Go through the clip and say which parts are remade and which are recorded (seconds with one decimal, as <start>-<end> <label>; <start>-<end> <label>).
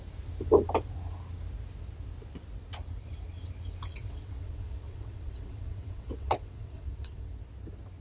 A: 0.0-3.9 recorded; 3.9-7.3 remade; 7.3-8.0 recorded